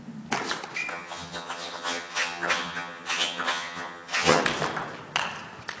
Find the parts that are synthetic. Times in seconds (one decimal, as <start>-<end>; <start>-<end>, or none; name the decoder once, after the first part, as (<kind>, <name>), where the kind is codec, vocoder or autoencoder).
0.9-4.4 (vocoder, HiFi-GAN)